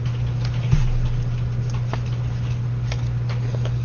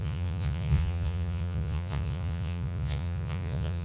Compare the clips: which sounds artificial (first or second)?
second